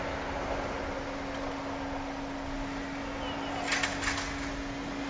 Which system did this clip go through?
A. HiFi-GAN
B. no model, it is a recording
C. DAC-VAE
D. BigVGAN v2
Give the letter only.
B